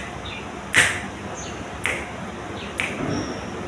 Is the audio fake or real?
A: real